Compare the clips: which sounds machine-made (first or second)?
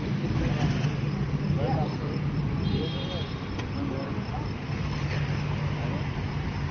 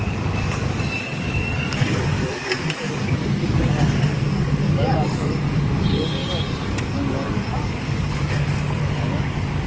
second